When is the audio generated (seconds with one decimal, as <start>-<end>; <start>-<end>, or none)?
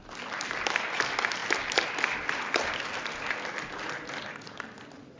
none